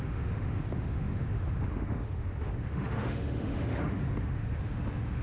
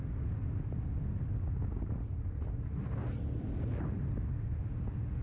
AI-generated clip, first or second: first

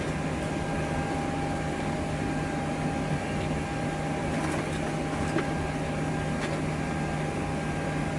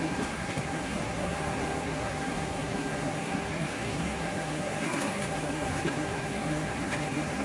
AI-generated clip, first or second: second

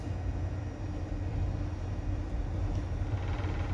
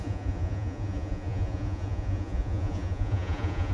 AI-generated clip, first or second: second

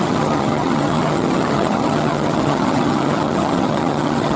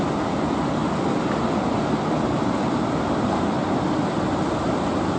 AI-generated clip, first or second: first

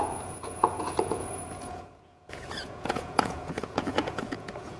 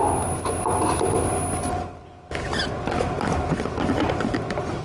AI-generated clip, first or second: first